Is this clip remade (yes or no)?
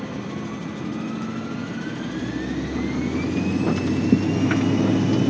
no